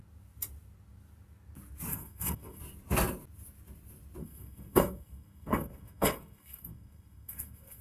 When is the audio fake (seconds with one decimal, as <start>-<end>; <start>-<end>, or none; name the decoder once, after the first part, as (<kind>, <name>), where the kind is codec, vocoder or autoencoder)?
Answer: 1.9-2.6 (codec, SNAC); 4.2-7.8